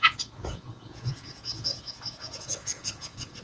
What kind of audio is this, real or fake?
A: fake